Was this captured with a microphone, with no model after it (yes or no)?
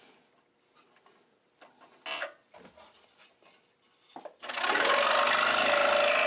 yes